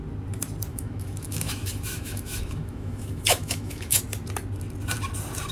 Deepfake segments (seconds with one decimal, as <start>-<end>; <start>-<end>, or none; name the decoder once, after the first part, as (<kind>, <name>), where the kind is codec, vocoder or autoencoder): 0.7-4.0 (autoencoder, DAC-VAE)